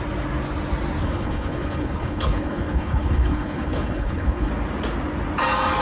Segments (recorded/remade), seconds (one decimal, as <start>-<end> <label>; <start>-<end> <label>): 0.0-1.0 recorded; 1.0-4.5 remade; 4.5-5.8 recorded